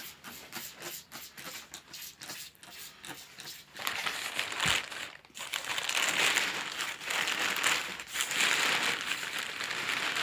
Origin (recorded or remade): recorded